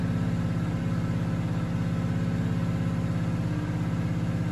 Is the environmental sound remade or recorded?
recorded